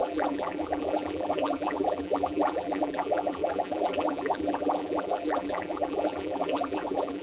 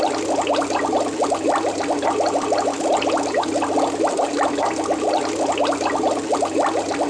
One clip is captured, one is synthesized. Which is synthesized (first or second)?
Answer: first